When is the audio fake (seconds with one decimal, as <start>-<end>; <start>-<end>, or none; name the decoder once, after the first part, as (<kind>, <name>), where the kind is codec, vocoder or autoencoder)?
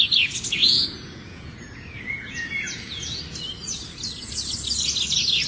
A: 0.6-3.2 (vocoder, Vocos)